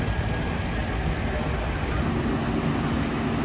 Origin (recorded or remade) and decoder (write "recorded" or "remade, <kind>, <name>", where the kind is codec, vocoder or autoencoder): recorded